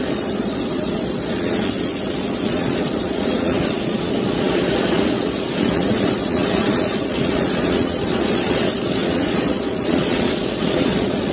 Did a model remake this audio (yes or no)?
yes